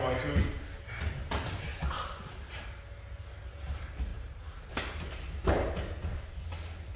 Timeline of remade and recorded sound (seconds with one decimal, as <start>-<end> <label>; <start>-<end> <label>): 0.0-4.1 recorded; 4.1-4.7 remade; 4.7-7.0 recorded